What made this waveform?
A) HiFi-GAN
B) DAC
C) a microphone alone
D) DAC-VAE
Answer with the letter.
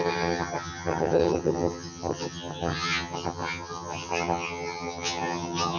A